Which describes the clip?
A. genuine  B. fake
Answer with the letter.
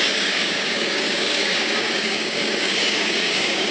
B